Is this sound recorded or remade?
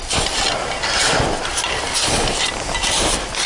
recorded